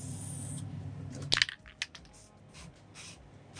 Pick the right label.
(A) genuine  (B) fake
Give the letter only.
A